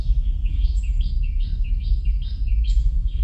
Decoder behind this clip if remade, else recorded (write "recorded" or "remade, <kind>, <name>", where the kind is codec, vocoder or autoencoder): remade, codec, SNAC